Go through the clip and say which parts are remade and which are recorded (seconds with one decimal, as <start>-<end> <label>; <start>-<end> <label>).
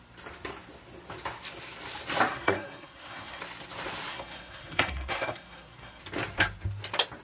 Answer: 0.0-2.3 recorded; 2.3-3.4 remade; 3.4-4.1 recorded; 4.1-6.0 remade; 6.0-7.2 recorded